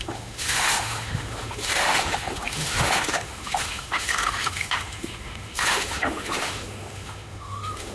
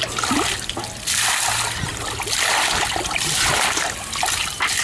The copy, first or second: first